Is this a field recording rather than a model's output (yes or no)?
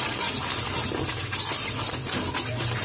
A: yes